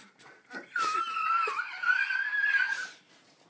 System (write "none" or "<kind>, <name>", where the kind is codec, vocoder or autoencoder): none